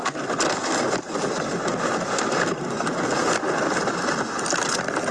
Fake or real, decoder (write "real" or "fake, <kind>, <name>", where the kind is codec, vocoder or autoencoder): real